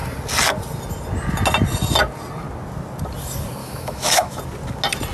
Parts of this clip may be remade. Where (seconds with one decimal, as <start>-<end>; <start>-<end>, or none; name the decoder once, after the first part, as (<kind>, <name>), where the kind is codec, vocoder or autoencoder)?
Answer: 3.6-4.4 (autoencoder, DAC-VAE)